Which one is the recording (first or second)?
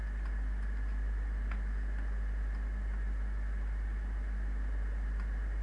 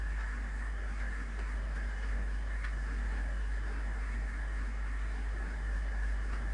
first